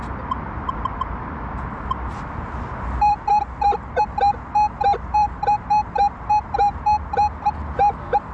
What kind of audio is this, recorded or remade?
recorded